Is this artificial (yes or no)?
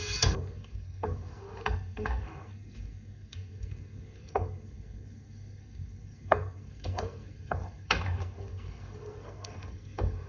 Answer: yes